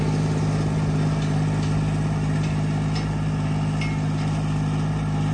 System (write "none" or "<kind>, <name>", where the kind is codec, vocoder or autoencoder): none